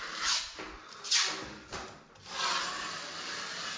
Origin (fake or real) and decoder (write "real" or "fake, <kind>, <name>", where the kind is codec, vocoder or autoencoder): real